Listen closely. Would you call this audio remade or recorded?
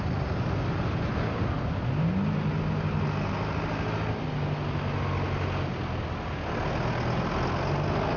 recorded